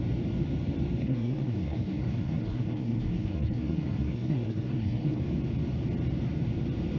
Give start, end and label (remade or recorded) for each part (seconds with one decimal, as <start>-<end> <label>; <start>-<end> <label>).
0.0-1.0 recorded; 1.0-5.2 remade; 5.2-7.0 recorded